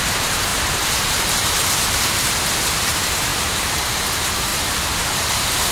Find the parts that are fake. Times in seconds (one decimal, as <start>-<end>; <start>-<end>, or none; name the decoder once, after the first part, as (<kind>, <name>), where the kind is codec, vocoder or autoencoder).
0.0-5.7 (vocoder, BigVGAN v2)